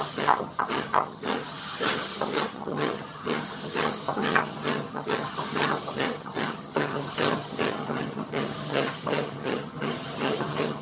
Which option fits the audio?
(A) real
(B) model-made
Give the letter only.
B